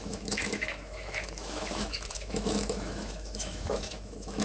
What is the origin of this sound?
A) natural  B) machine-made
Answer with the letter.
B